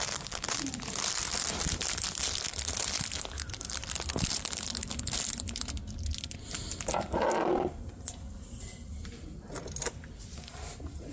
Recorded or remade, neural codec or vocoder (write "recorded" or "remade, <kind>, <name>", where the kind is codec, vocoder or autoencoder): recorded